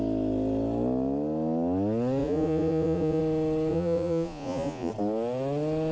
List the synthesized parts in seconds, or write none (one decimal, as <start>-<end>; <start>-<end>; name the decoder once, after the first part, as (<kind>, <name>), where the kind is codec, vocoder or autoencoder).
2.2-3.2 (vocoder, Vocos); 3.7-4.9